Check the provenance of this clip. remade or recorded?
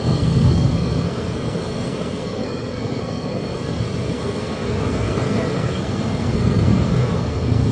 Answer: remade